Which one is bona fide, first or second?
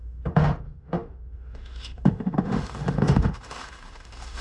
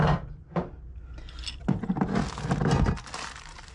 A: second